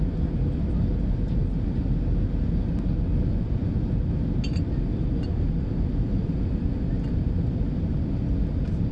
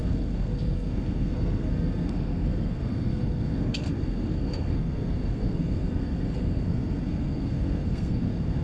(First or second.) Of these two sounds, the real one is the first